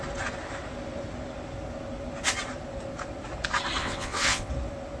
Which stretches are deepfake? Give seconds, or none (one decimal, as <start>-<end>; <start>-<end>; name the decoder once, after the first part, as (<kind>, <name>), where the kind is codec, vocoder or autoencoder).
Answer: 3.8-4.5 (vocoder, WaveNeXt)